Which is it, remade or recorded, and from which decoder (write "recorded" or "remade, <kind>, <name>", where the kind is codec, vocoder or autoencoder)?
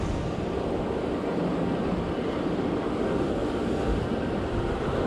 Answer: recorded